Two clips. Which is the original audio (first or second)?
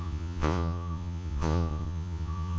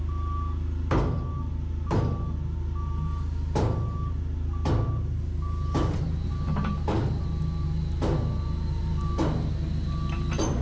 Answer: second